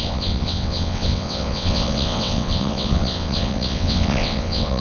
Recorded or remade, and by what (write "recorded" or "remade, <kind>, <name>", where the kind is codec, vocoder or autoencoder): remade, vocoder, WaveNeXt